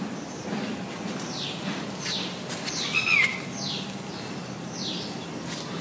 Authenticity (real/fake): real